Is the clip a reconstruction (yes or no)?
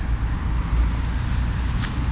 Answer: no